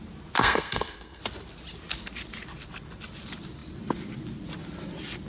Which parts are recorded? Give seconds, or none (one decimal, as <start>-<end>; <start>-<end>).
0.0-0.4; 1.2-5.3